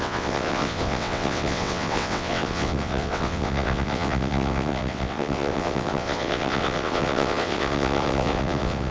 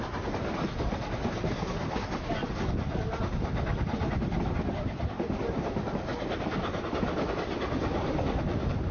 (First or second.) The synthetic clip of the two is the first